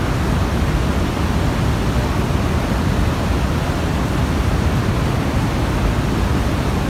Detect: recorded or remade recorded